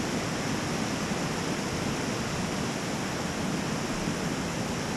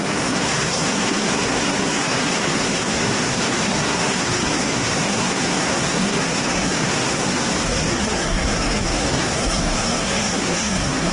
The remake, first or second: second